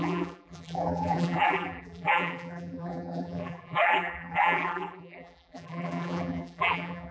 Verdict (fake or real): fake